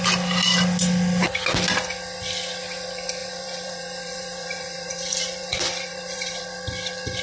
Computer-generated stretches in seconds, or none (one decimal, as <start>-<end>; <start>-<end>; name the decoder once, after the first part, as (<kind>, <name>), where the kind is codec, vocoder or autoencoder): 3.2-6.4 (vocoder, BigVGAN v2)